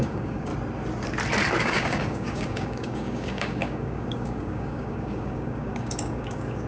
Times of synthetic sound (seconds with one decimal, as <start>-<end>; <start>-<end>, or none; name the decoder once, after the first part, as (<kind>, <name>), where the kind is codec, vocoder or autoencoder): 0.0-0.5 (codec, DAC); 1.6-6.7